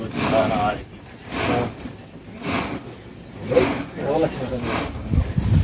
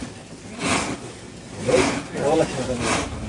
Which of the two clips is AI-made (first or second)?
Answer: first